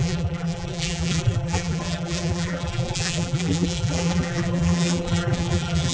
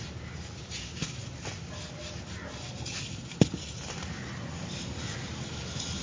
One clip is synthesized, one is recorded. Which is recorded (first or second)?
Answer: second